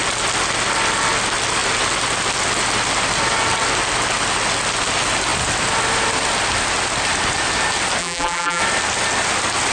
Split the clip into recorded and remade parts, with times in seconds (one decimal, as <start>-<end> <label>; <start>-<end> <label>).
0.0-8.0 recorded; 8.0-8.6 remade; 8.6-9.7 recorded